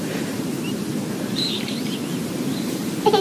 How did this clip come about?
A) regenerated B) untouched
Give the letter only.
A